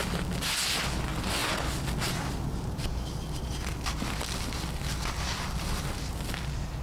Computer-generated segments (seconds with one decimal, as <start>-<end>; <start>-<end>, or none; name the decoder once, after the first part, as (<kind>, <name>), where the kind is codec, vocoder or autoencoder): none

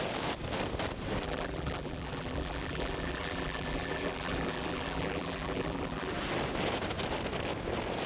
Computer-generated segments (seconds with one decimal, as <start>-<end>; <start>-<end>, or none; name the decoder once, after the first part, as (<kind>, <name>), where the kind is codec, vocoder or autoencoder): 1.2-6.1 (vocoder, BigVGAN v2)

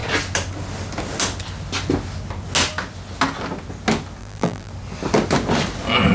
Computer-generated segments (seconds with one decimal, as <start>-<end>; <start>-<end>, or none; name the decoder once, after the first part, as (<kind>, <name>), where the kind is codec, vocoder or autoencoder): 4.2-4.7 (vocoder, BigVGAN v2)

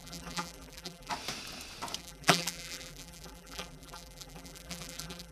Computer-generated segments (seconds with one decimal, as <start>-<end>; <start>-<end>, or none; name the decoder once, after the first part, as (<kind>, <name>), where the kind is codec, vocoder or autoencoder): 0.0-1.1 (vocoder, BigVGAN v2); 2.0-5.3

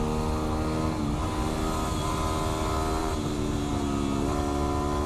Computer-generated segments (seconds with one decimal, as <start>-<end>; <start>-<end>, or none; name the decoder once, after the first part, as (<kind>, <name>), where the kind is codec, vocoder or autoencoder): 3.0-3.7 (vocoder, BigVGAN v2)

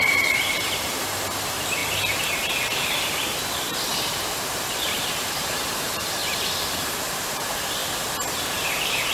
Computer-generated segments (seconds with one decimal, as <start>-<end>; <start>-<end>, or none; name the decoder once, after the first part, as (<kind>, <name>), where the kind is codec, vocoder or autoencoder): 0.0-1.8 (vocoder, BigVGAN v2); 2.3-6.2; 7.1-9.1

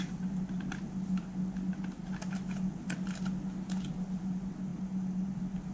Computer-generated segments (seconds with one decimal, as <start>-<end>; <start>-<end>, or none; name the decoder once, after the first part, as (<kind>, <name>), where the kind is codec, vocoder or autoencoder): 4.7-5.3 (vocoder, BigVGAN v2)

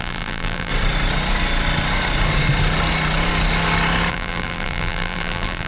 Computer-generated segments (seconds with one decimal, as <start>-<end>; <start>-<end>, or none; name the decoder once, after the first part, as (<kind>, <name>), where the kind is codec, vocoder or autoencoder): 0.0-0.7 (vocoder, BigVGAN v2); 4.1-5.7